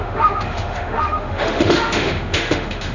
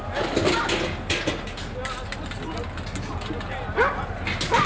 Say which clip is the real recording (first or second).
second